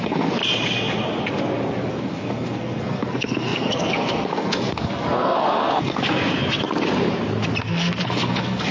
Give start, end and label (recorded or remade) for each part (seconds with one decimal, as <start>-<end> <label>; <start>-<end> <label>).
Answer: 0.0-0.4 remade; 0.4-1.9 recorded; 1.9-6.4 remade; 6.4-7.6 recorded; 7.6-8.7 remade